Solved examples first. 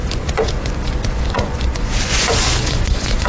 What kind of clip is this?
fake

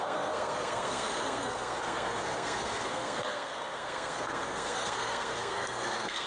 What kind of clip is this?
fake